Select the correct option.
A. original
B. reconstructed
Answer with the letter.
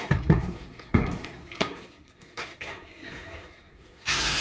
B